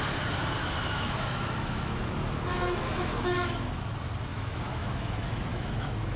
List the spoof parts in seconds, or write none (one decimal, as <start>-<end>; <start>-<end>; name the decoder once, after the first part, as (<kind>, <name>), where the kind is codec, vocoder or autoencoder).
0.6-3.8 (autoencoder, DAC-VAE); 4.3-6.2